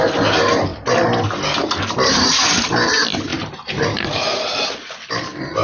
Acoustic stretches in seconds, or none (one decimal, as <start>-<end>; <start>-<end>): 0.0-5.6